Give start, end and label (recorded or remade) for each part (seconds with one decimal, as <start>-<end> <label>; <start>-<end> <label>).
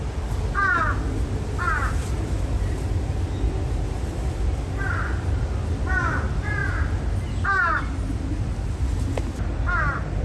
0.0-10.2 recorded